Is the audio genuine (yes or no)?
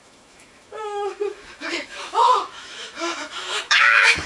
no